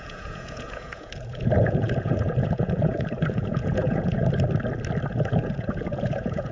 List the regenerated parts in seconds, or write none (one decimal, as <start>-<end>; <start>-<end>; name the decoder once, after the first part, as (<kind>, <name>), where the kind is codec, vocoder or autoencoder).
0.0-4.2 (vocoder, Vocos); 5.1-6.5